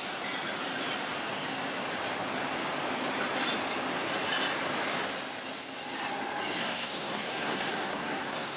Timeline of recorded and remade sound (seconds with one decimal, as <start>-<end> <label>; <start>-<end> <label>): 0.0-6.6 recorded; 6.6-8.6 remade

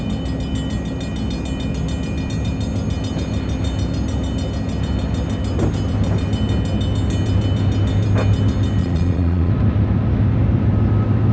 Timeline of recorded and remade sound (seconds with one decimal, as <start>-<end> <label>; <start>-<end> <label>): 0.0-8.8 recorded; 8.8-9.5 remade; 9.5-11.3 recorded